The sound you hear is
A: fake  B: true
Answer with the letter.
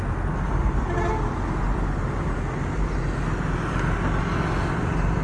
B